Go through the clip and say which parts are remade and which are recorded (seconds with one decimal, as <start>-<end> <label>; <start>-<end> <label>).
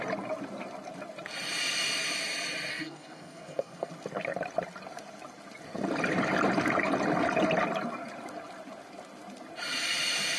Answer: 0.0-2.7 recorded; 2.7-3.9 remade; 3.9-10.4 recorded